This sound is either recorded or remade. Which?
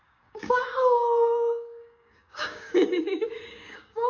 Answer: remade